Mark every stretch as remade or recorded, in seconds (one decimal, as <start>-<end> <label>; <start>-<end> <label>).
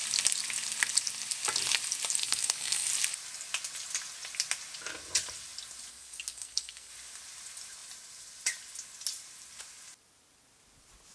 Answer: 0.0-2.2 recorded; 2.2-2.9 remade; 2.9-5.9 recorded; 5.9-6.9 remade; 6.9-11.1 recorded